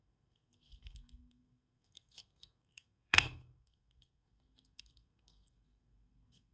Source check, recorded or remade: remade